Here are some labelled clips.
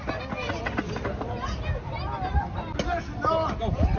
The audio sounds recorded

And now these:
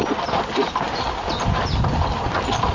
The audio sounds recorded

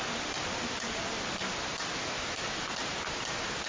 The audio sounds recorded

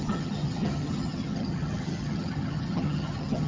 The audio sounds remade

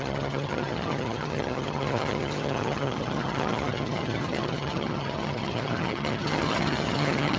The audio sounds remade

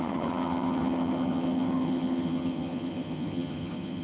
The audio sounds remade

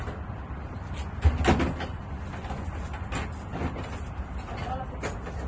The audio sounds recorded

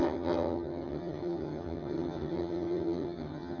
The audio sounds remade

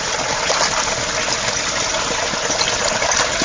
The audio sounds recorded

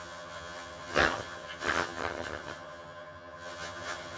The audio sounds remade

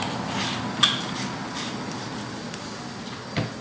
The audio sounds recorded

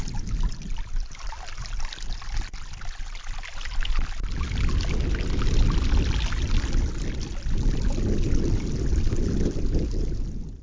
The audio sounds recorded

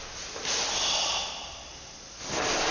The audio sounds recorded